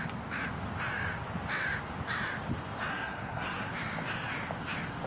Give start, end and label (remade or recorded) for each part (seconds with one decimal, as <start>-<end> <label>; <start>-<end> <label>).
0.0-2.9 recorded; 2.9-3.7 remade; 3.7-5.1 recorded